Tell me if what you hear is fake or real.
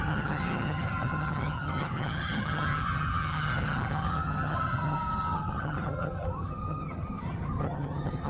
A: fake